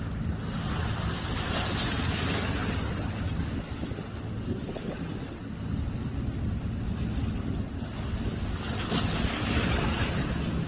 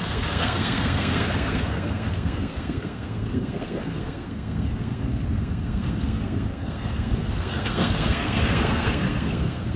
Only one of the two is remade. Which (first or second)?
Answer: second